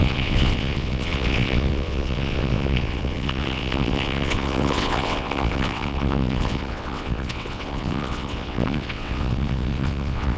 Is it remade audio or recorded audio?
remade